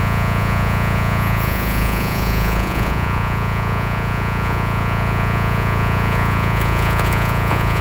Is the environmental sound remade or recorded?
remade